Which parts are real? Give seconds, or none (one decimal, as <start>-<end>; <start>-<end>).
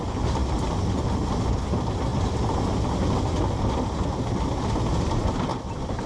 0.0-6.1